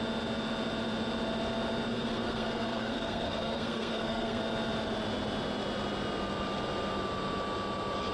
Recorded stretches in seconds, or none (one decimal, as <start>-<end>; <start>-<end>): 0.0-1.9; 4.4-8.1